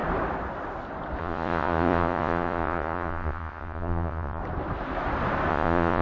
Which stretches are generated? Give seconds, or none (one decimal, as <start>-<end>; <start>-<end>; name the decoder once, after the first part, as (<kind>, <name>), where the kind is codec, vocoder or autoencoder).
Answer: 1.2-4.4 (vocoder, Vocos); 5.5-6.0